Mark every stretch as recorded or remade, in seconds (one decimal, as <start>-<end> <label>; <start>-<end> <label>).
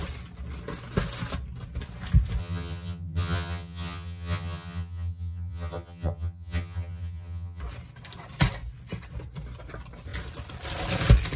0.0-2.4 recorded; 2.4-7.6 remade; 7.6-11.4 recorded